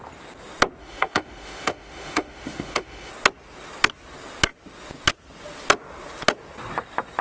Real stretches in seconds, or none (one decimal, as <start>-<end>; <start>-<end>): 0.0-0.8; 3.1-7.2